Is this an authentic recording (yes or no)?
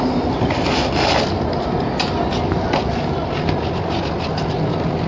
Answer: yes